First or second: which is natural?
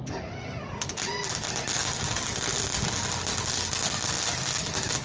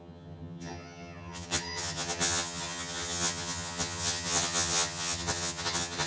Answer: first